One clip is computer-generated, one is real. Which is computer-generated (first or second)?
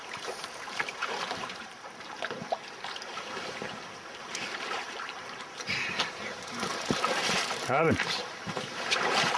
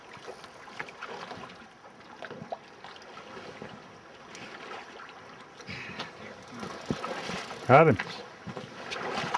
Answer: first